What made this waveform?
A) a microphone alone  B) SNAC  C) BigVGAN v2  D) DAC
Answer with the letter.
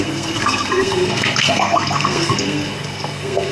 B